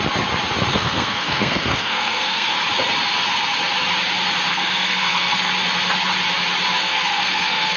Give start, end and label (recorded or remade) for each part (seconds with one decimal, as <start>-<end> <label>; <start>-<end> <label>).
0.0-0.7 recorded; 0.7-2.5 remade; 2.5-4.5 recorded; 4.5-5.5 remade; 5.5-6.8 recorded; 6.8-7.8 remade

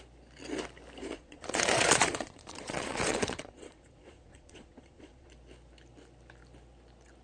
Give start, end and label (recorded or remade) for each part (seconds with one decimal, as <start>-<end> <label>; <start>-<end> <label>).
0.0-1.0 recorded; 1.0-5.3 remade; 5.3-7.2 recorded